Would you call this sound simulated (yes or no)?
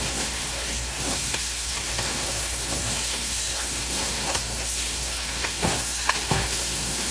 yes